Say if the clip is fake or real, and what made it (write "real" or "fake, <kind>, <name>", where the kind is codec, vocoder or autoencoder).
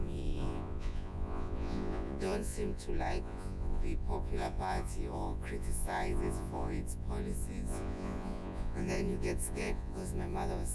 fake, vocoder, Vocos